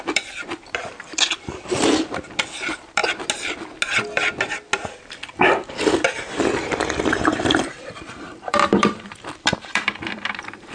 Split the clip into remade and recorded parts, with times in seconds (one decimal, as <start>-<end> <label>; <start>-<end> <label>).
0.0-3.0 remade; 3.0-7.1 recorded; 7.1-10.7 remade